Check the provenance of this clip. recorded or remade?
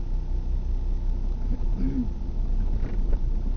recorded